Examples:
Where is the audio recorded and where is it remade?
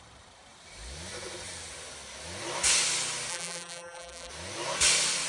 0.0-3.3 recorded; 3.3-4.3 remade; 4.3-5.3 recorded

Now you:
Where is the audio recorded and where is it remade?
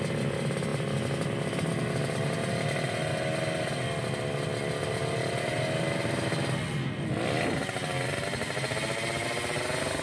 0.0-10.0 recorded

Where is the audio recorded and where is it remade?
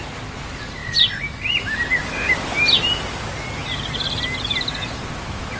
0.0-5.6 recorded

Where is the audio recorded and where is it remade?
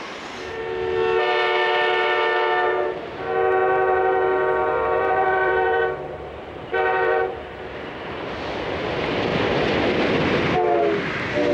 0.0-4.6 recorded; 4.6-8.4 remade; 8.4-11.5 recorded